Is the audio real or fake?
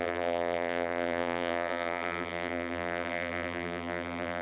fake